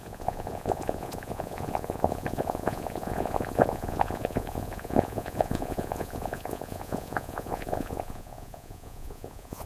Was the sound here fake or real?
fake